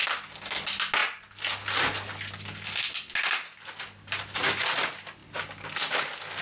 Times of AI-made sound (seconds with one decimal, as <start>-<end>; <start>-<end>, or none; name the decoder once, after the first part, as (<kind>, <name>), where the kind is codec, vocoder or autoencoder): none